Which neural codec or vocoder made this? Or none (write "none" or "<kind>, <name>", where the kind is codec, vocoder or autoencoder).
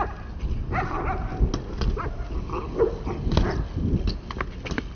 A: none